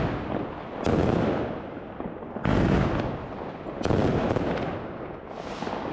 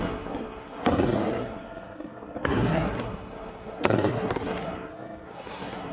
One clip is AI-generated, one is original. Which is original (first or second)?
first